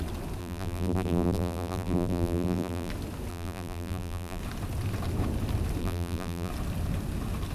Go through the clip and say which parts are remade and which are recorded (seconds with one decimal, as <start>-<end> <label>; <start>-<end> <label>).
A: 0.0-0.4 recorded; 0.4-2.9 remade; 2.9-3.3 recorded; 3.3-4.4 remade; 4.4-5.8 recorded; 5.8-6.5 remade; 6.5-7.5 recorded